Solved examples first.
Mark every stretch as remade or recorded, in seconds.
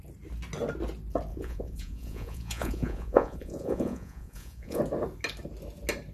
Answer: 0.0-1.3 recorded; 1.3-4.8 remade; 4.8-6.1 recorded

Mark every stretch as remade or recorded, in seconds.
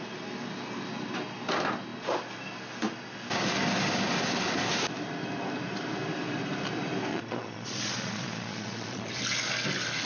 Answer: 0.0-7.1 recorded; 7.1-9.1 remade; 9.1-10.1 recorded